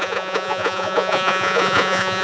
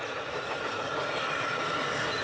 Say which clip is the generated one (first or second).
first